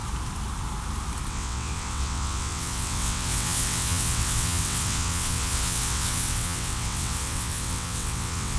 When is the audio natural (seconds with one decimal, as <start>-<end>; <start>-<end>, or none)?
0.0-1.3